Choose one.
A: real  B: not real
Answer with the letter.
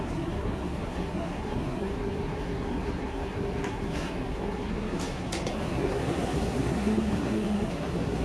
B